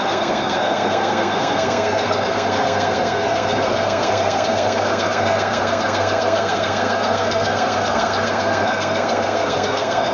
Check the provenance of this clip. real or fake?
fake